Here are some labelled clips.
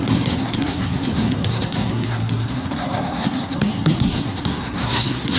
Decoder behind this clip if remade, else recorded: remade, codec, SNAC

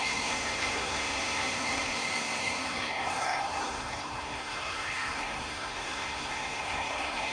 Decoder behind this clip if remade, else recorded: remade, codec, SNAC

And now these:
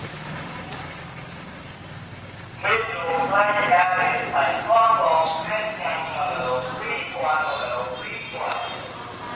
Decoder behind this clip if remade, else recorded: recorded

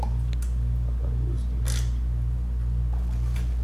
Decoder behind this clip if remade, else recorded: recorded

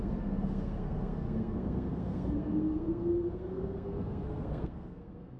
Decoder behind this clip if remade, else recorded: remade, codec, SNAC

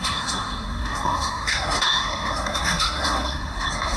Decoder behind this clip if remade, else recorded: remade, codec, SNAC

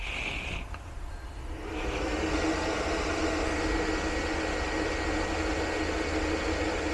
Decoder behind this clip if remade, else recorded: recorded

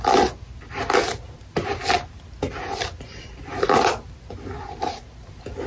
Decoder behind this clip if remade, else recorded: recorded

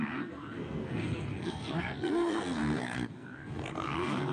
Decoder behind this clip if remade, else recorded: remade, codec, SNAC